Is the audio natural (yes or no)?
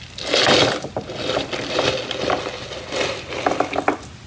yes